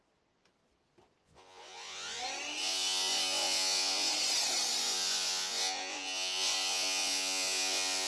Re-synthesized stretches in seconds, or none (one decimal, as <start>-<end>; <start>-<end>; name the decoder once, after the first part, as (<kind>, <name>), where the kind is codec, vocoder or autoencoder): 1.2-2.2 (vocoder, Vocos); 2.6-4.1; 4.8-8.1